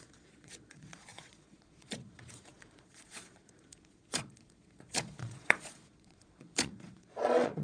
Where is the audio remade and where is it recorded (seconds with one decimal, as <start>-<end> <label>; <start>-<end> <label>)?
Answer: 0.0-7.6 remade